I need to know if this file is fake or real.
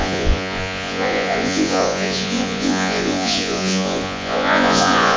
fake